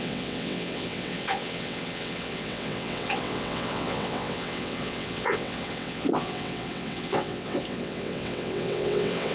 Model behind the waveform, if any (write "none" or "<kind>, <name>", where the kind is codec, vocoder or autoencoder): vocoder, WaveNeXt